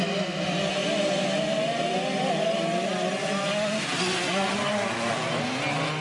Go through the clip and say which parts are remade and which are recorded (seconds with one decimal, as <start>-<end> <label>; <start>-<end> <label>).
0.0-6.0 recorded